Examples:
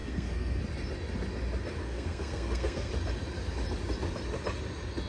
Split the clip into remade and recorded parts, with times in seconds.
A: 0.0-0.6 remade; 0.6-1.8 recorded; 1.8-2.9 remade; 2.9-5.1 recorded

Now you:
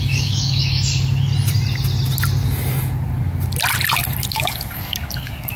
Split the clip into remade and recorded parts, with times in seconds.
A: 0.0-0.9 remade; 0.9-4.3 recorded; 4.3-5.6 remade

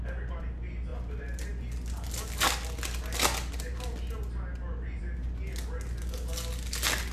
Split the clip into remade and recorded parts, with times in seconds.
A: 0.0-7.1 recorded

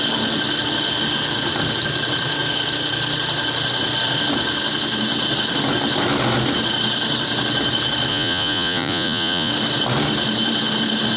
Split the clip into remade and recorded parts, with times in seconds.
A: 0.0-8.1 recorded; 8.1-9.5 remade; 9.5-11.2 recorded

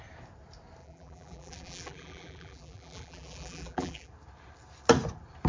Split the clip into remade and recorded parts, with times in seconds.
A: 0.0-0.8 recorded; 0.8-4.1 remade; 4.1-5.5 recorded

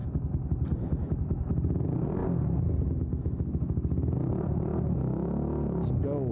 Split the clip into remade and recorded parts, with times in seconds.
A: 0.0-0.5 recorded; 0.5-2.2 remade; 2.2-4.3 recorded; 4.3-4.7 remade; 4.7-6.3 recorded